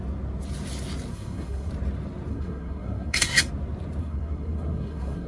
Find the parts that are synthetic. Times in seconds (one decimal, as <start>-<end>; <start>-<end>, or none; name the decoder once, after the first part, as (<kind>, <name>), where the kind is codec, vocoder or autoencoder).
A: 1.1-1.7 (codec, SNAC); 2.3-3.5; 4.0-5.3